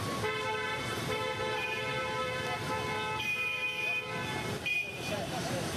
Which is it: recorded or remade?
remade